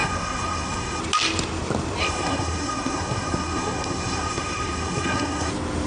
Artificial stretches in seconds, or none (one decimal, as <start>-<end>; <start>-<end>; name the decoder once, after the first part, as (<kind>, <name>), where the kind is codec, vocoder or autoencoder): 0.0-1.0 (codec, SNAC); 2.0-5.5